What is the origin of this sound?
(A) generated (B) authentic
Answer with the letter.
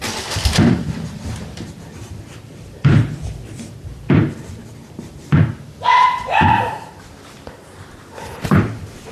A